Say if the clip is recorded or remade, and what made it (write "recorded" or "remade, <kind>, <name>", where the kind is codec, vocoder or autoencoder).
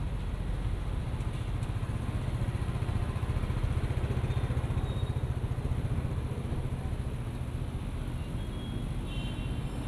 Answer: recorded